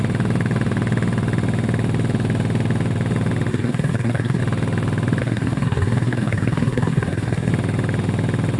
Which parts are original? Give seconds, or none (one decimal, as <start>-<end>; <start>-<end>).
0.0-3.5; 4.4-5.2; 7.5-8.6